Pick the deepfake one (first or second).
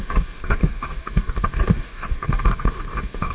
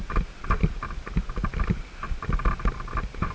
first